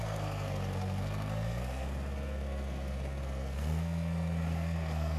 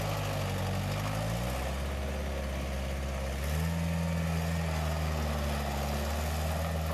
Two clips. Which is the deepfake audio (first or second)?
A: first